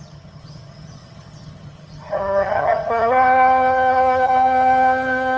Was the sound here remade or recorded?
remade